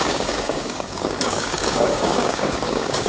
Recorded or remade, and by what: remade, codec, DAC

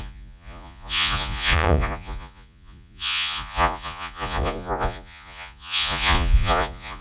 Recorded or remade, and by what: remade, vocoder, Vocos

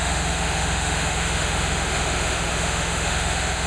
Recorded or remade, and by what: remade, autoencoder, DAC-VAE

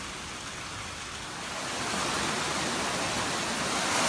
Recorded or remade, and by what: recorded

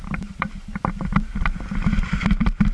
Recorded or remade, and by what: remade, vocoder, BigVGAN v2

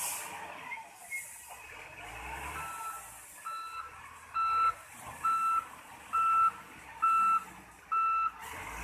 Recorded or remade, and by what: recorded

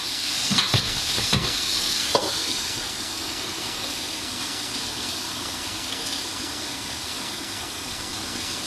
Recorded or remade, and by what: remade, codec, SNAC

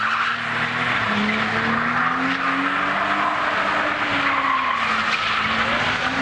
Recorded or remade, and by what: recorded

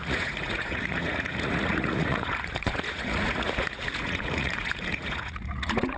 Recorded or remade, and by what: remade, vocoder, Vocos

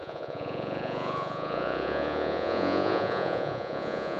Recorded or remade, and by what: remade, vocoder, Vocos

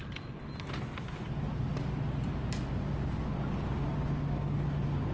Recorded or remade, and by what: recorded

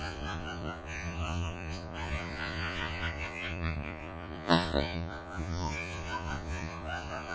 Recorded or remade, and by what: remade, vocoder, Vocos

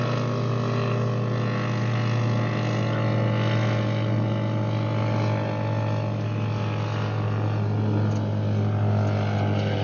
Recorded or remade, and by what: recorded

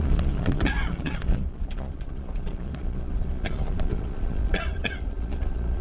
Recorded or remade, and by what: remade, vocoder, Vocos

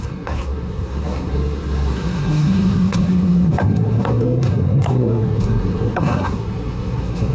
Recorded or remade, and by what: remade, codec, SNAC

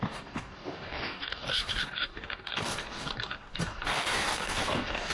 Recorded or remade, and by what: remade, codec, DAC